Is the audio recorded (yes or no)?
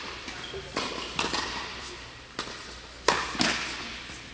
no